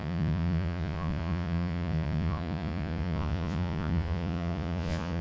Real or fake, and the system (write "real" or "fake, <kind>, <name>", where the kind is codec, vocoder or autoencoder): fake, vocoder, Vocos